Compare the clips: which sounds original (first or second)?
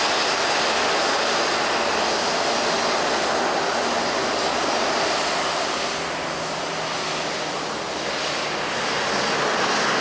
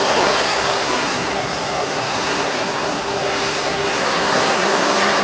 first